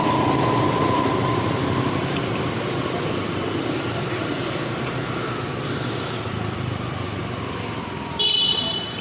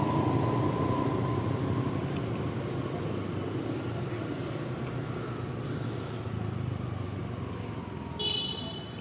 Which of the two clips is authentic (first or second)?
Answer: second